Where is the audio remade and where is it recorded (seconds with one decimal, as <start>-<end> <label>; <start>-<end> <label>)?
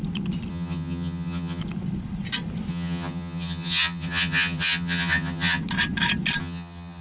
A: 0.0-0.5 recorded; 0.5-1.6 remade; 1.6-2.7 recorded; 2.7-5.6 remade; 5.6-6.4 recorded; 6.4-7.0 remade